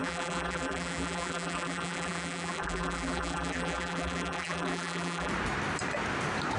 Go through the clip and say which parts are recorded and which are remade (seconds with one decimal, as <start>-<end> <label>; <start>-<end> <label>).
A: 0.0-5.3 remade; 5.3-6.6 recorded